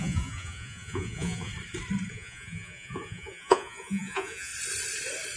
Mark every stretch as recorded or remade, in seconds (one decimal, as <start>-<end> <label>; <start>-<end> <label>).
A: 0.0-1.5 remade; 1.5-2.1 recorded; 2.1-4.5 remade; 4.5-5.4 recorded